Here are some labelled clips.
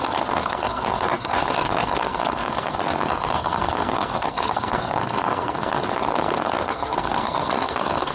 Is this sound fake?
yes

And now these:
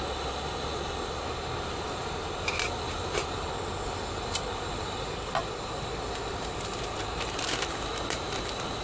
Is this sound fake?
no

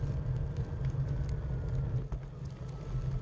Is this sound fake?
no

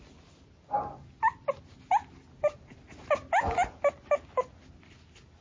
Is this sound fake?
no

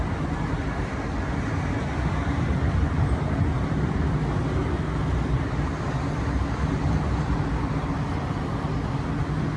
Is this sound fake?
no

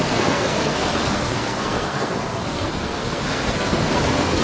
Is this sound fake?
yes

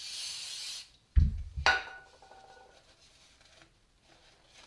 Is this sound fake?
no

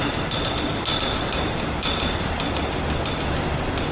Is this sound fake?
no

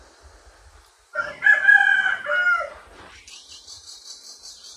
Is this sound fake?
no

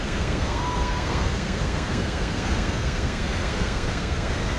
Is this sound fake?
yes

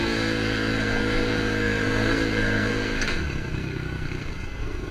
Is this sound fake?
yes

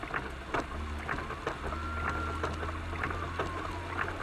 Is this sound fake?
no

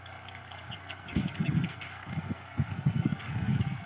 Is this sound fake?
yes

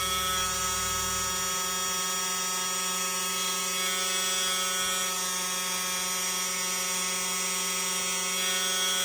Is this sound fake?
no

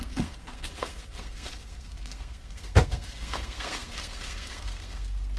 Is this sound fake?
yes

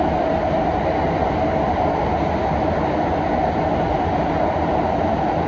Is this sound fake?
no